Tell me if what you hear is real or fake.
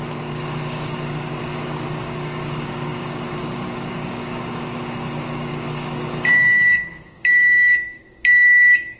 fake